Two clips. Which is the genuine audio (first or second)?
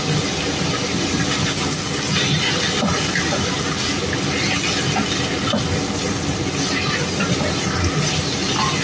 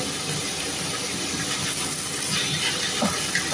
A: first